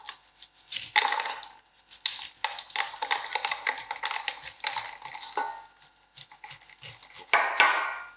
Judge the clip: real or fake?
real